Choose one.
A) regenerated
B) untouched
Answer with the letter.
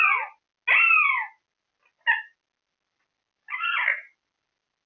B